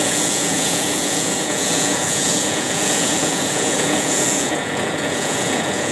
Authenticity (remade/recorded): remade